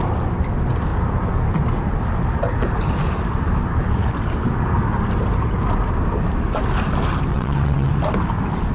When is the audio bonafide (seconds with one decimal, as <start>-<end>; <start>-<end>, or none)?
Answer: 0.0-7.3; 7.9-8.7